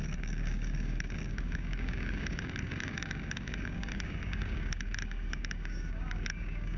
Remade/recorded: remade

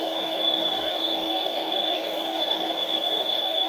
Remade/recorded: remade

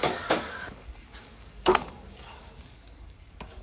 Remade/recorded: remade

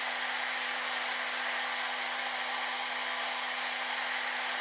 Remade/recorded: recorded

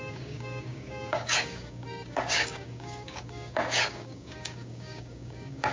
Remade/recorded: remade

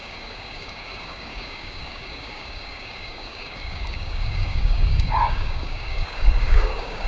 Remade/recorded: remade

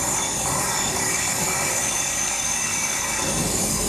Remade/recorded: remade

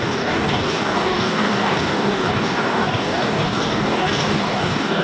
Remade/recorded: remade